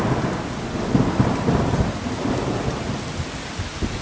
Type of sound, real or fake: real